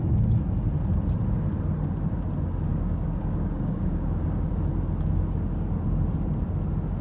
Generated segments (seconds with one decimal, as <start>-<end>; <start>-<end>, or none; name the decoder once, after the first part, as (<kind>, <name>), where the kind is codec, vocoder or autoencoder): 2.7-4.5 (codec, DAC)